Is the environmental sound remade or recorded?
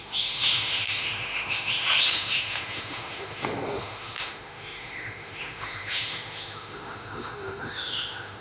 remade